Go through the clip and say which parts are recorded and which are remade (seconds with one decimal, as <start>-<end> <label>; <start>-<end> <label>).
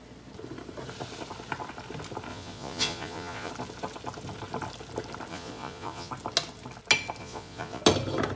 0.0-2.3 recorded; 2.3-3.5 remade; 3.5-5.3 recorded; 5.3-6.1 remade; 6.1-7.2 recorded; 7.2-7.8 remade; 7.8-8.4 recorded